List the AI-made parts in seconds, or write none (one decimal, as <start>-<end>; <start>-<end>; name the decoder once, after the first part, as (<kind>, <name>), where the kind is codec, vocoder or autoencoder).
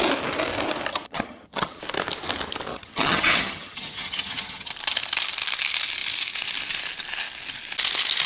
0.9-1.8 (vocoder, HiFi-GAN); 2.7-4.7